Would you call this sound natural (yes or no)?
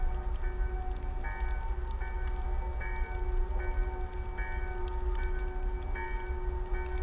yes